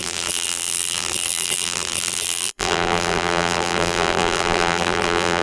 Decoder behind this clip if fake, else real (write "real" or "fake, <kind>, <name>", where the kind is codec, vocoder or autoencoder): fake, vocoder, BigVGAN v2